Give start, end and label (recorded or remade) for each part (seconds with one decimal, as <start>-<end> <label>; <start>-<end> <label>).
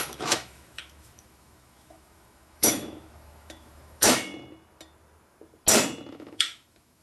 0.0-4.3 remade; 4.3-6.1 recorded; 6.1-7.0 remade